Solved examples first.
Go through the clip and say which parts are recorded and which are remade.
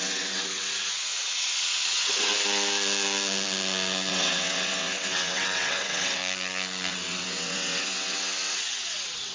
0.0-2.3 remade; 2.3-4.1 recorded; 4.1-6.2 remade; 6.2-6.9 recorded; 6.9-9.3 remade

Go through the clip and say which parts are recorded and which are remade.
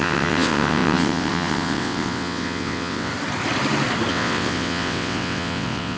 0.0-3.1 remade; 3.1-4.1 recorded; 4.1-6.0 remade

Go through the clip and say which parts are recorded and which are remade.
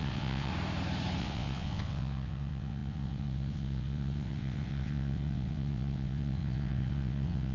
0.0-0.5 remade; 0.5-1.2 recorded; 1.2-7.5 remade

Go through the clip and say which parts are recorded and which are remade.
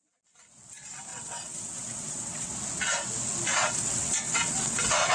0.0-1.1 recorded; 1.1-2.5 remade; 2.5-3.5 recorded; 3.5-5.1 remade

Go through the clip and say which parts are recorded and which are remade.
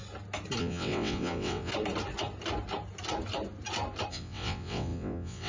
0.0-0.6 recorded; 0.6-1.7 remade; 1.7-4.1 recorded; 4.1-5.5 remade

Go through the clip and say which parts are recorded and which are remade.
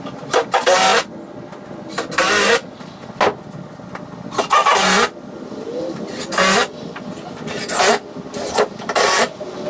0.0-9.7 recorded